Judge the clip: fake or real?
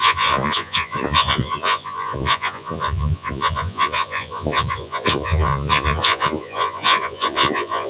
fake